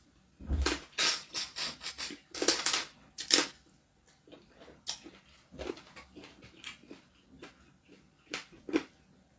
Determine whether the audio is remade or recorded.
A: recorded